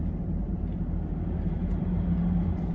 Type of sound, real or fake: fake